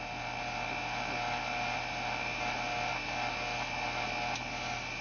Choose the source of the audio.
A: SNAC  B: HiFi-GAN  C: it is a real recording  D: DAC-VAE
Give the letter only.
C